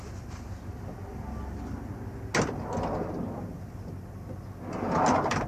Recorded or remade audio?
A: recorded